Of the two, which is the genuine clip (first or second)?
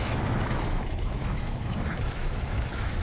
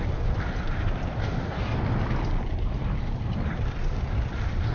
second